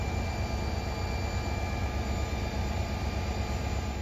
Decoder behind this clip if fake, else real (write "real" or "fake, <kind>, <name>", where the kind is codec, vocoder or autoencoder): real